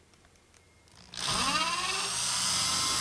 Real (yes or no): yes